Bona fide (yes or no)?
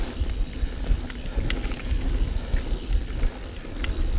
yes